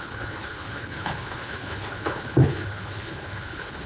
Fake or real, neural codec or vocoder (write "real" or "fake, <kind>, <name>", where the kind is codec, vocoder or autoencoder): fake, codec, HILCodec